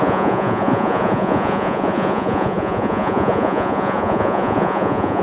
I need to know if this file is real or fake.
fake